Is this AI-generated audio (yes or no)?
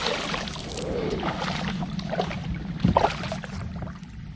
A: no